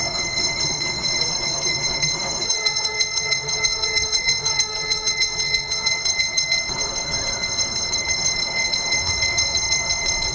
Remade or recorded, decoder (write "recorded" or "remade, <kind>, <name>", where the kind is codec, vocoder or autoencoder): remade, vocoder, WaveNeXt